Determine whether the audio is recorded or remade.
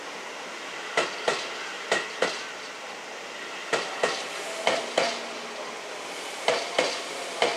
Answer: recorded